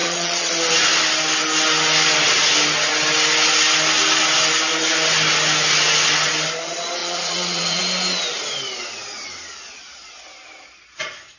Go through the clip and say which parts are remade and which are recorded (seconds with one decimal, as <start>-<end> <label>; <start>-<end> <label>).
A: 0.0-0.5 remade; 0.5-7.0 recorded; 7.0-7.8 remade; 7.8-11.4 recorded